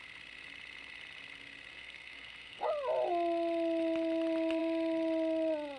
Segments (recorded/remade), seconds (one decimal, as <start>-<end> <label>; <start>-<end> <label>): 0.0-1.7 recorded; 1.7-2.7 remade; 2.7-5.8 recorded